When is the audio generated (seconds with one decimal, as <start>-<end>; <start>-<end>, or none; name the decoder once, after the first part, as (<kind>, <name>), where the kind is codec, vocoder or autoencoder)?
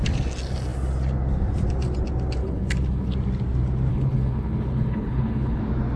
2.4-3.1 (codec, HILCodec); 3.9-5.6